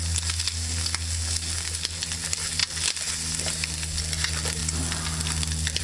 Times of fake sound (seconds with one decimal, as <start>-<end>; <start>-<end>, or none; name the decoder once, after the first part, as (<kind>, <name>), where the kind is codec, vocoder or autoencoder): none